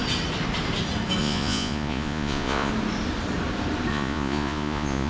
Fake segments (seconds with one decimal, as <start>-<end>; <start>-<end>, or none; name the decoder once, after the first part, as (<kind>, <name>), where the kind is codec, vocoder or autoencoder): 1.2-2.7 (vocoder, Vocos); 3.9-5.1